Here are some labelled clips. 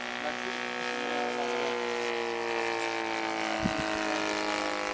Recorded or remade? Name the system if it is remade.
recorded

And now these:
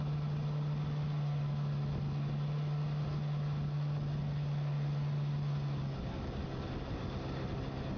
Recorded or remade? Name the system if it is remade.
recorded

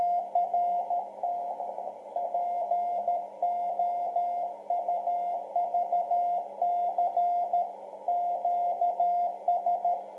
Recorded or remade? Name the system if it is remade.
recorded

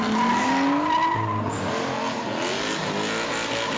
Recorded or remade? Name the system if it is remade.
recorded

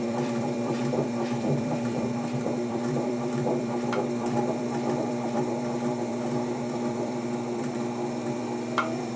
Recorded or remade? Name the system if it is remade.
remade, vocoder, BigVGAN v2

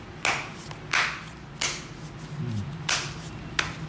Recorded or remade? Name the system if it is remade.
recorded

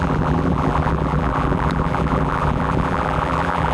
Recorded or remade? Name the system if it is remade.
remade, vocoder, BigVGAN v2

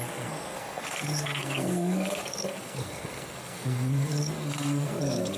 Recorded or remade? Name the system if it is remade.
remade, codec, SNAC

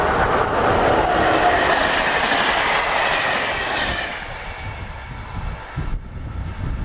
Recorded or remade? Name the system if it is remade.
recorded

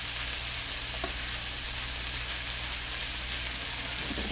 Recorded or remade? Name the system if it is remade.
recorded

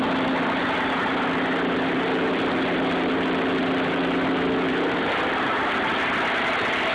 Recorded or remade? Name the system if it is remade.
recorded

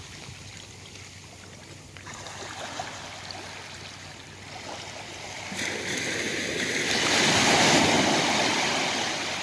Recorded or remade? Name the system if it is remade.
recorded